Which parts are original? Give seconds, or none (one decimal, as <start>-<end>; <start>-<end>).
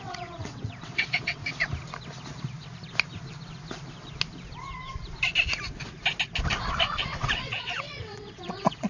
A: 1.4-6.6